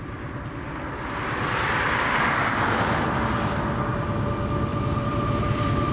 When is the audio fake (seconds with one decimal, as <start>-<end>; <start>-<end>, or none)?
4.7-5.9